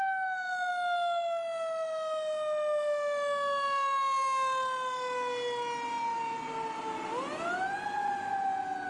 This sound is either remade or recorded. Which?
recorded